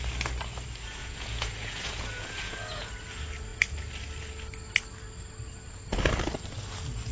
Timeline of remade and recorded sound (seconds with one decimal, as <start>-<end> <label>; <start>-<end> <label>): 0.0-1.0 recorded; 1.0-2.9 remade; 2.9-7.1 recorded